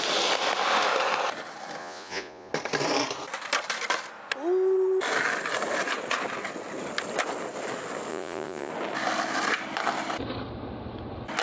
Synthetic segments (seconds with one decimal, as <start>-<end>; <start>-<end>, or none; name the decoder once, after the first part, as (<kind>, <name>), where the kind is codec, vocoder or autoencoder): 1.8-2.5 (vocoder, Vocos); 8.1-8.7